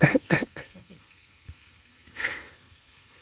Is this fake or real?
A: fake